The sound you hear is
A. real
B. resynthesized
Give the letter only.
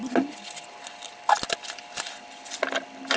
A